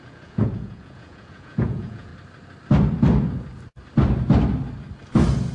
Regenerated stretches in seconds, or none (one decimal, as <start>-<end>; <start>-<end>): 0.0-2.1